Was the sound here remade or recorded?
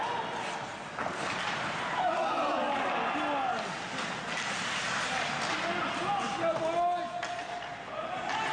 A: recorded